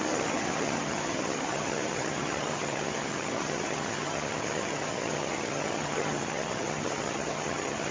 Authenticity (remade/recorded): remade